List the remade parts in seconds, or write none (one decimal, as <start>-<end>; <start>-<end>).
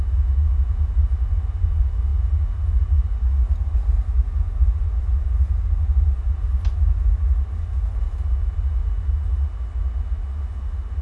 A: none